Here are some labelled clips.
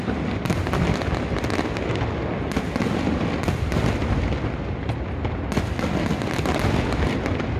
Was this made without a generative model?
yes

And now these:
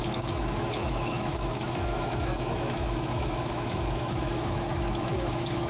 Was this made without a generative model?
no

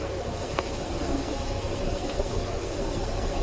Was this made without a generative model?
no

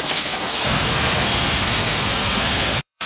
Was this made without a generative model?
no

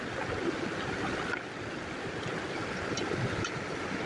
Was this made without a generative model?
yes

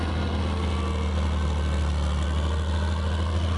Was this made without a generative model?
yes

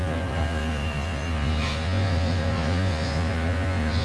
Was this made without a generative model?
no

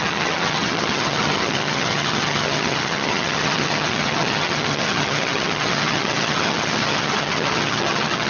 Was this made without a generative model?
no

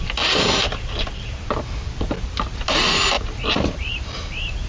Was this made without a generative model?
yes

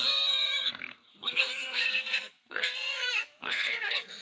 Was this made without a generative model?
no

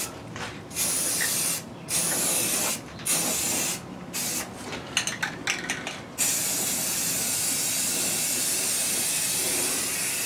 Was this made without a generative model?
yes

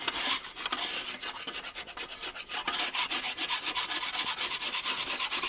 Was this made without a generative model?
yes